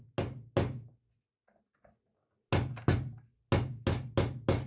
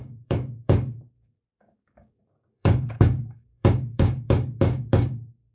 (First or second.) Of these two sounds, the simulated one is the second